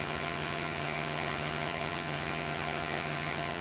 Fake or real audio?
fake